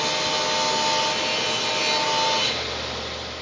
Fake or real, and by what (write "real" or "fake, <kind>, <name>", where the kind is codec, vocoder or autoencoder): real